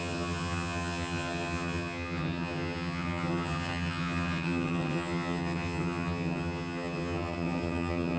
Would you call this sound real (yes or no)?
no